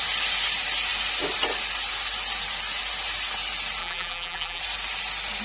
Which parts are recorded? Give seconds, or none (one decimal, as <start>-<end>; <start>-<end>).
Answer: 0.0-3.8; 4.6-5.4